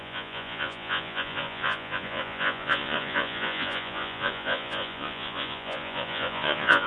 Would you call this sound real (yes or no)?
no